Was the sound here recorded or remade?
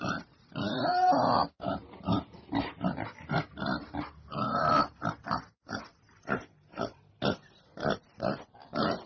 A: remade